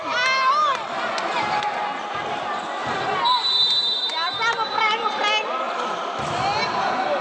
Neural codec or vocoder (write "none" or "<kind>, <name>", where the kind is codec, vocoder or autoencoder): none